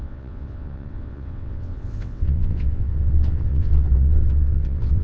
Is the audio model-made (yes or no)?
yes